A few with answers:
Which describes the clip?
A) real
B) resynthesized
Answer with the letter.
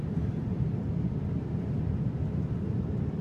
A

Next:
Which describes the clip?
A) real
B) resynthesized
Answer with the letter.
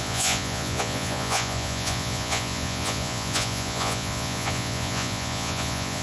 B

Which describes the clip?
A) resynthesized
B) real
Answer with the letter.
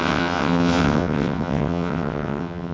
A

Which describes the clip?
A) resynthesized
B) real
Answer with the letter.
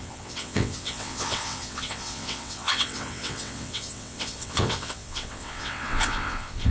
A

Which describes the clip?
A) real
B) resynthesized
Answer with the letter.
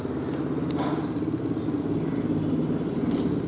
A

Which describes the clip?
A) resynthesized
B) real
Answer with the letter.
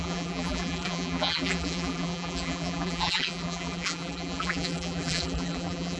A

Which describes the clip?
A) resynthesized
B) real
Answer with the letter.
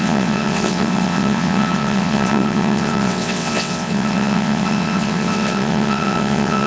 A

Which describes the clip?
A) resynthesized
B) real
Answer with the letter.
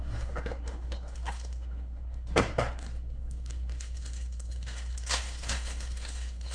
A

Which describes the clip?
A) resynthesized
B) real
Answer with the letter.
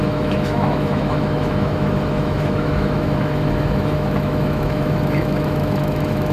A